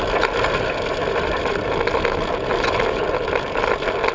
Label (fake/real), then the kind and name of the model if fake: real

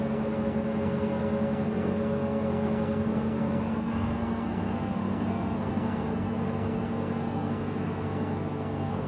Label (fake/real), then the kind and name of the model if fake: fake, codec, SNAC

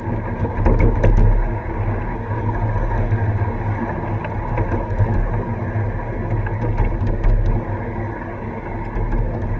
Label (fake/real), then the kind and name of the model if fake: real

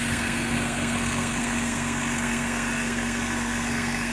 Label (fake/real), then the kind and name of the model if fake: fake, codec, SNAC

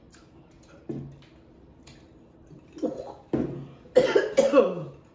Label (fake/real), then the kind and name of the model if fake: real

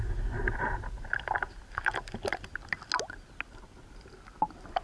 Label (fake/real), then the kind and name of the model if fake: real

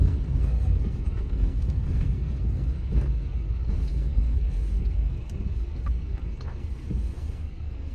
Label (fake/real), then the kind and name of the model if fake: fake, codec, SNAC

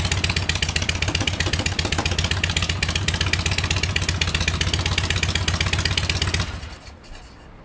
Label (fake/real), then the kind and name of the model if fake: real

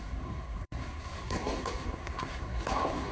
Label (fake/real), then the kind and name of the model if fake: fake, codec, SNAC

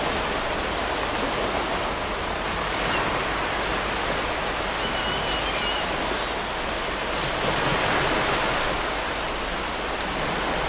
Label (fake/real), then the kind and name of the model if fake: real